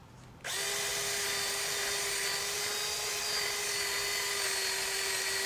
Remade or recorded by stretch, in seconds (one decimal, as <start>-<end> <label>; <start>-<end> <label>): 0.0-5.5 recorded